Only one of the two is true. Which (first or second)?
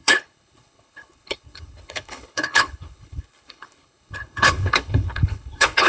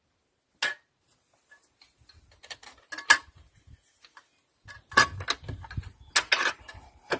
second